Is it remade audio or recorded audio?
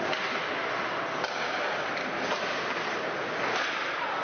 recorded